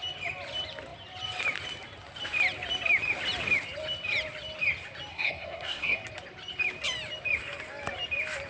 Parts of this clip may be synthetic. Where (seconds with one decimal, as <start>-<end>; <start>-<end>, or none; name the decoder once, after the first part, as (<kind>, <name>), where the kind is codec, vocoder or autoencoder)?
5.1-6.0 (codec, SNAC)